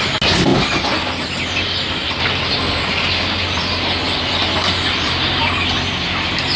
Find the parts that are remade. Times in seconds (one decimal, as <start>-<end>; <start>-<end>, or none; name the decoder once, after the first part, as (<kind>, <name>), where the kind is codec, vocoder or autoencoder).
none